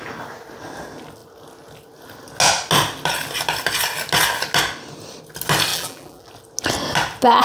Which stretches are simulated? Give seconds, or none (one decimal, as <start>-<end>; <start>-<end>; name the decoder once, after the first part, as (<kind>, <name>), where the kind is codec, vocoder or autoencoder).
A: 5.7-6.3 (vocoder, BigVGAN v2)